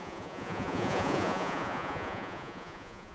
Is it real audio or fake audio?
fake